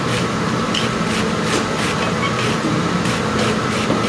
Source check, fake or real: real